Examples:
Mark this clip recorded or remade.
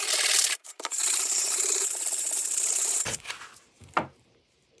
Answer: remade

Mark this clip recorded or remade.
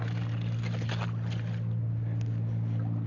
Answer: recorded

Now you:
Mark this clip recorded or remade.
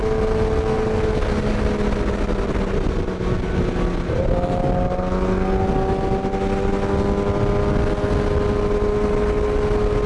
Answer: recorded